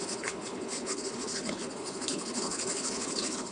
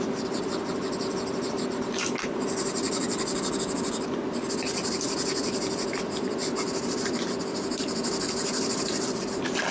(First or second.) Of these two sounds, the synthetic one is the first